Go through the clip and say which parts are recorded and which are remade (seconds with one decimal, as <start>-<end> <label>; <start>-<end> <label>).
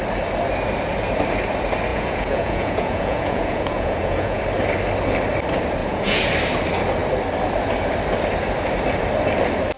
0.0-1.9 recorded; 1.9-4.4 remade; 4.4-5.8 recorded; 5.8-6.3 remade; 6.3-9.8 recorded